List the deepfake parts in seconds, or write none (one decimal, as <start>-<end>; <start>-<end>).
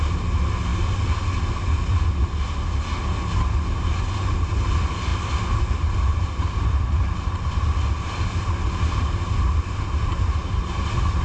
none